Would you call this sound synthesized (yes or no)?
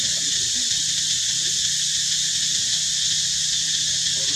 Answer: no